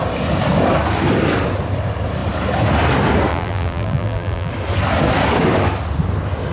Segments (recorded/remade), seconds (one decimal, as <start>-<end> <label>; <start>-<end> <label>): 0.0-3.3 recorded; 3.3-4.5 remade; 4.5-6.5 recorded